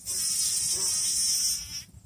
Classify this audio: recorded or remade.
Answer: recorded